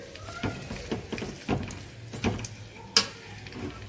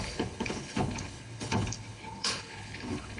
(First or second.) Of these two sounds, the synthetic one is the second